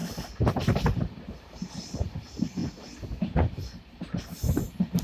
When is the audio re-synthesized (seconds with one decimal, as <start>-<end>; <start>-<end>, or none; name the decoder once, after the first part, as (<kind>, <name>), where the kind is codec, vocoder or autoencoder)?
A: 0.6-2.6 (vocoder, BigVGAN v2); 3.2-5.0